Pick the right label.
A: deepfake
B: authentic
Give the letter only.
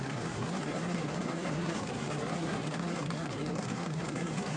A